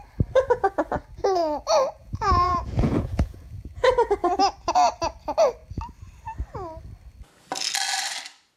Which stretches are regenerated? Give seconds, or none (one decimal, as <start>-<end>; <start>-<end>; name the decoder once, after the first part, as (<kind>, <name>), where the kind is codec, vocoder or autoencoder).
2.0-3.7 (vocoder, Vocos)